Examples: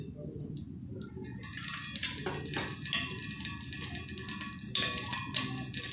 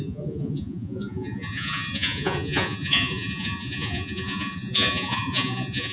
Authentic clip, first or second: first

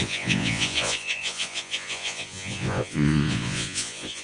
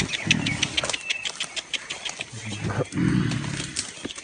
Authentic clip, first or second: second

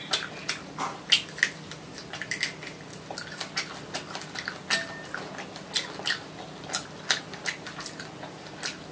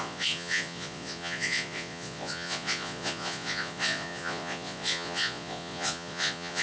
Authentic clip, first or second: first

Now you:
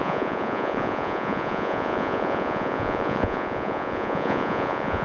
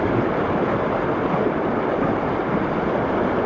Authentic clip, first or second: second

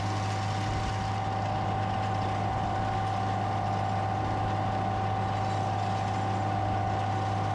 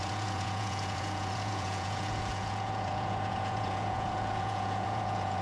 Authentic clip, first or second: first